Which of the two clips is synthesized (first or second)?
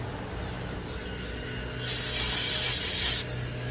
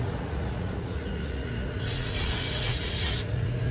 second